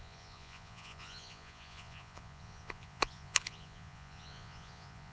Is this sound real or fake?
fake